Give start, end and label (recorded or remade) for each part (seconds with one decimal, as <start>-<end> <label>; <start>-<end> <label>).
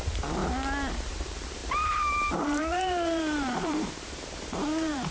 0.0-0.4 remade; 0.4-0.9 recorded; 0.9-5.1 remade